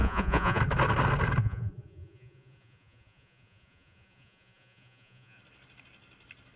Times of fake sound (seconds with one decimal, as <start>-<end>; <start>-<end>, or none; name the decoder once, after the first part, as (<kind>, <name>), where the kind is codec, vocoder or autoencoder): 0.0-0.6 (vocoder, Vocos); 1.4-5.4